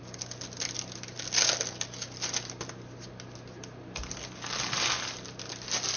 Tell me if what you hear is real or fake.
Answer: real